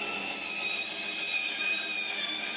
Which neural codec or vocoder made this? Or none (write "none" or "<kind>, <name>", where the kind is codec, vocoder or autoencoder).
none